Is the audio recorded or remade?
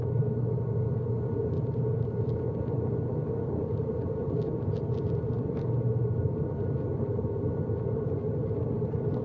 recorded